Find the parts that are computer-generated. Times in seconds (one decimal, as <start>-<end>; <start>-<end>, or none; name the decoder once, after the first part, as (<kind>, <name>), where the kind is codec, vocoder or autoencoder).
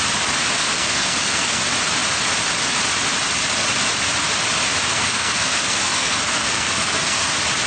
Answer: 0.6-1.6 (codec, SNAC); 4.9-7.3